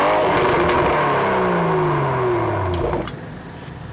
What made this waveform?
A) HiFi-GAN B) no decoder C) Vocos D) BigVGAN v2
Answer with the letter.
B